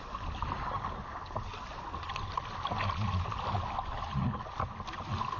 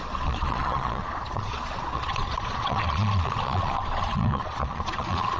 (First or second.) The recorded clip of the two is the first